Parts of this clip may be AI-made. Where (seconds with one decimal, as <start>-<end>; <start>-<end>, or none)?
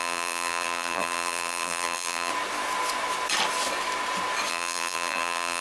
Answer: 0.0-2.3; 4.5-5.6